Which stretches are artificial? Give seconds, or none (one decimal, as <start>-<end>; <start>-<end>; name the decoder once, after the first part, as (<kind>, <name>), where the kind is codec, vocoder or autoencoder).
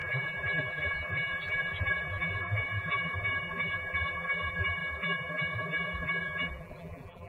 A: 0.0-7.3 (vocoder, BigVGAN v2)